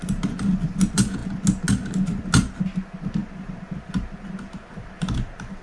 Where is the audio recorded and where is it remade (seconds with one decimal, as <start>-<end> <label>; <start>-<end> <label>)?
0.0-5.6 recorded